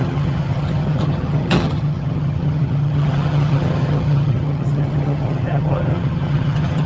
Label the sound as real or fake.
fake